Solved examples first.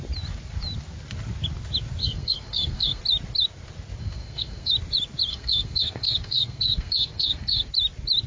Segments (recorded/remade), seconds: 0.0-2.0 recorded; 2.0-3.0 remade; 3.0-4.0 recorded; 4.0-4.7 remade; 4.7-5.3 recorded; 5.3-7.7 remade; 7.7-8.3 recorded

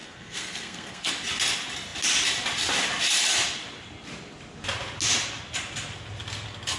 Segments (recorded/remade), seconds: 0.0-1.1 remade; 1.1-6.8 recorded